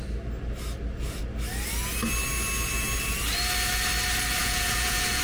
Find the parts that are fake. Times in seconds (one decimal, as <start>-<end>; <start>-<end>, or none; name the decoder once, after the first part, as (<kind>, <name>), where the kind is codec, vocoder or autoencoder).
4.4-5.2 (vocoder, Vocos)